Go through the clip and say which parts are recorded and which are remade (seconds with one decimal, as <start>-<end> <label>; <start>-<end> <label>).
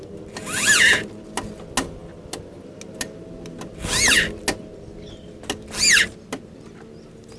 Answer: 0.0-7.4 recorded